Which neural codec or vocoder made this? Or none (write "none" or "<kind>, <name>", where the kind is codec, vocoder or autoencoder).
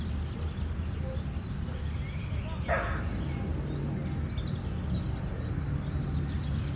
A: none